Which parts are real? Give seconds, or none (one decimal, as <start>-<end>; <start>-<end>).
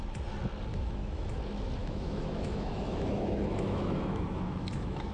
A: 0.0-0.7; 1.3-1.8